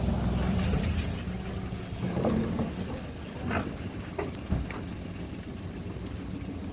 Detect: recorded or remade recorded